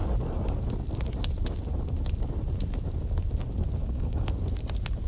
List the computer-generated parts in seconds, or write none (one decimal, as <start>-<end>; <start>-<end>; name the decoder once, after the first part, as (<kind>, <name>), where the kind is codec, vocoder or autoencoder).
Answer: 3.8-4.3 (codec, DAC)